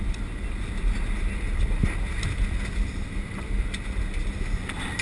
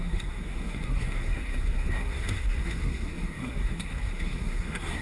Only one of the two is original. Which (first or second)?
first